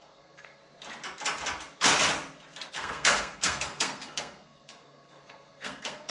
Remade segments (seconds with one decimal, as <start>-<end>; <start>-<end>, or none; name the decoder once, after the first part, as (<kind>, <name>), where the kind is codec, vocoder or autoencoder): 0.0-0.6 (codec, SNAC); 2.7-6.1